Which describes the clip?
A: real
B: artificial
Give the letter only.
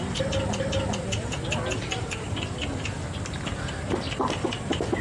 A